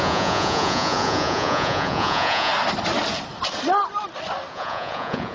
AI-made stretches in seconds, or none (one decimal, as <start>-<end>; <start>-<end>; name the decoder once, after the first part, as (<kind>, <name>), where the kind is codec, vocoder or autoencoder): 0.0-2.5 (vocoder, Vocos); 4.5-5.3

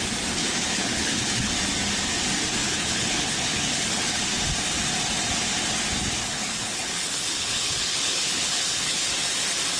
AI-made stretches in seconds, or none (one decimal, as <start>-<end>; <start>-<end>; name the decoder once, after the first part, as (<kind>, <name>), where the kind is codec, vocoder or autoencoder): 0.4-1.5 (codec, HILCodec); 2.6-4.2; 6.2-9.1

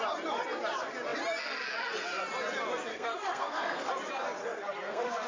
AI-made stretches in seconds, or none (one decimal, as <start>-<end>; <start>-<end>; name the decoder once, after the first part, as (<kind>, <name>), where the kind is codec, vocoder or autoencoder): 2.9-3.9 (codec, SNAC); 4.4-5.3

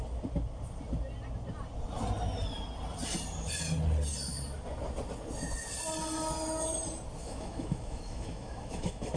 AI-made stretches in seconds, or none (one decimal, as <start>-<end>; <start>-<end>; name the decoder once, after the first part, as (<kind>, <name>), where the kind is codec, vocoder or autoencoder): 7.2-9.2 (autoencoder, DAC-VAE)

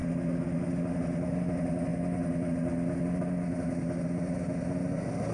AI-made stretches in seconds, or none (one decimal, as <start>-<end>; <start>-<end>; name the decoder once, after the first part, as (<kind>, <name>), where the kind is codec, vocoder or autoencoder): none